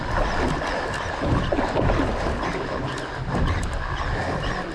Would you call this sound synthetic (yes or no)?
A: no